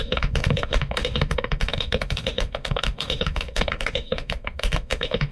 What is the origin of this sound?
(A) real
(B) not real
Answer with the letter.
B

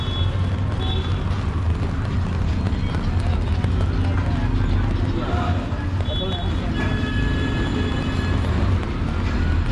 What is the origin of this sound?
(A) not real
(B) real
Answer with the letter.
B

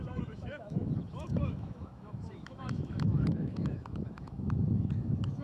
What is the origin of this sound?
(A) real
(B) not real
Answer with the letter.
B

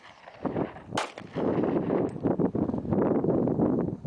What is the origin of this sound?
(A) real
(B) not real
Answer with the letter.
A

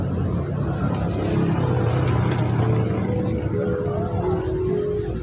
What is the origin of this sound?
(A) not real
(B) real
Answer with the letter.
B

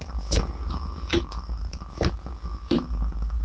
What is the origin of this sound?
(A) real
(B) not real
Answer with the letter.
B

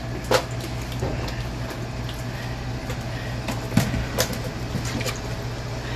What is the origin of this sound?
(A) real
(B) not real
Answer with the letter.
A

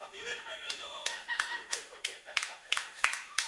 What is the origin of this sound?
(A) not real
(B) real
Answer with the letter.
A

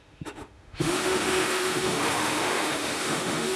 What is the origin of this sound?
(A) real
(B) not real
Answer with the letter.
B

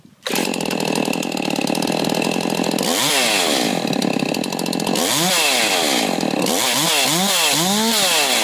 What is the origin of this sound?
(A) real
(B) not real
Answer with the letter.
A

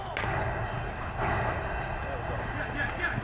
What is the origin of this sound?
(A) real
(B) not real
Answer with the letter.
A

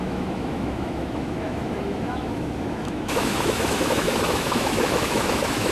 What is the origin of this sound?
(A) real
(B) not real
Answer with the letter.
B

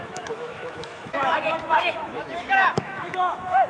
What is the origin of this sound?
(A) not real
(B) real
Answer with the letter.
A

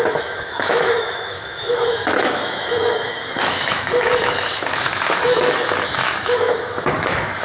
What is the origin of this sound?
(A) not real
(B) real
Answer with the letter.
A